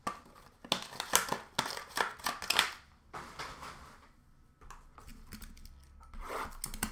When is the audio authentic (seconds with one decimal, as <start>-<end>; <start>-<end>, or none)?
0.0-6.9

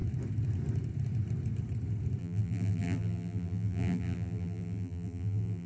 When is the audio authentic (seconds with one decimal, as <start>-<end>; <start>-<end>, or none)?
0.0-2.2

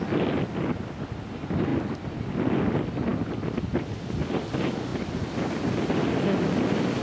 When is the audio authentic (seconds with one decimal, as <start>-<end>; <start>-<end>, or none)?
0.0-7.0